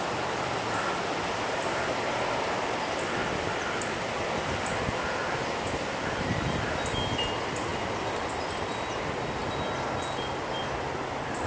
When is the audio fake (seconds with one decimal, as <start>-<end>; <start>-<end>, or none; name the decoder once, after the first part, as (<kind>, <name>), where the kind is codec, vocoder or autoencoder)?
none